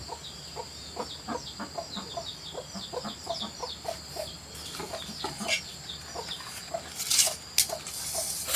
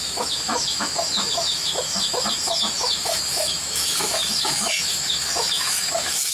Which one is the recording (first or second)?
first